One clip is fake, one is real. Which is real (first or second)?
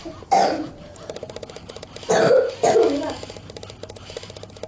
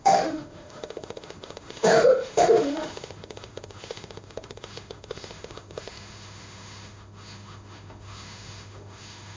first